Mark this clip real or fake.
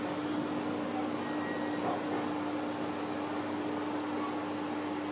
real